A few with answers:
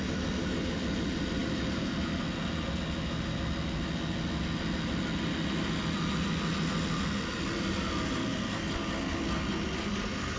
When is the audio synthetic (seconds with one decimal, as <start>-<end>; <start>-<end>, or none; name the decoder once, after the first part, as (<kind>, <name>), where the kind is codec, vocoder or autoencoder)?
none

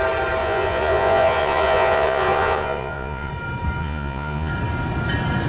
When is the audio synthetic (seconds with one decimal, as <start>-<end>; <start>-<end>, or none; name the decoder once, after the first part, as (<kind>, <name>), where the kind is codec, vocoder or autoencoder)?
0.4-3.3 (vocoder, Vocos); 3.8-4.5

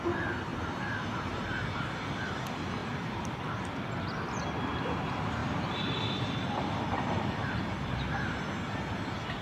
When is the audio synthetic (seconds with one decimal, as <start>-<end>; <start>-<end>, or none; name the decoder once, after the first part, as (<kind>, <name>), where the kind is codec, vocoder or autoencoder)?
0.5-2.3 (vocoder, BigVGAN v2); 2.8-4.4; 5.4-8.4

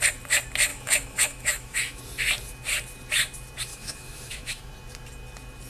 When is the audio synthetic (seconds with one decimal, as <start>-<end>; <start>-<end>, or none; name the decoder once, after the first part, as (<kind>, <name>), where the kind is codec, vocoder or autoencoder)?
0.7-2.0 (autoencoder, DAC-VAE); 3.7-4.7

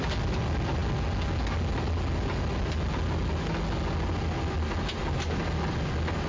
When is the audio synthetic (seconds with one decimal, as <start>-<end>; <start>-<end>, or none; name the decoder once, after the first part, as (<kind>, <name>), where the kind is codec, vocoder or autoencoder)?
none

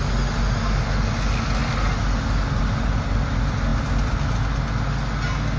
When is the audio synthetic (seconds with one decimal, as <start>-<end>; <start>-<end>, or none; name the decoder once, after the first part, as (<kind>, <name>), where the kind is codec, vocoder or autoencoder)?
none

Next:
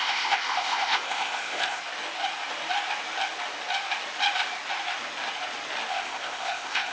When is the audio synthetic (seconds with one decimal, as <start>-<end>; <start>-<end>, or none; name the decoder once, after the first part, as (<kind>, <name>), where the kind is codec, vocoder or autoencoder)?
0.0-1.8 (codec, ZipCodec); 5.9-6.9